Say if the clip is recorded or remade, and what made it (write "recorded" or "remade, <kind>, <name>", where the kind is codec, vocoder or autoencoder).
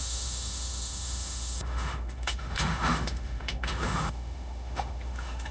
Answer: remade, autoencoder, DAC-VAE